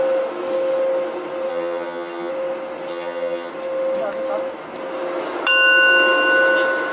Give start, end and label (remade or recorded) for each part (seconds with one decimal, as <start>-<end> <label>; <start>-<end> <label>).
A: 0.0-1.5 recorded; 1.5-2.3 remade; 2.3-2.9 recorded; 2.9-3.5 remade; 3.5-6.9 recorded